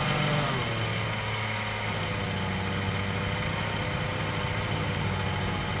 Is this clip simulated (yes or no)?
no